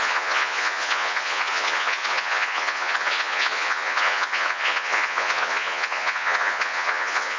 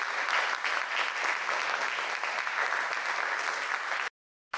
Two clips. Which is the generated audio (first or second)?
first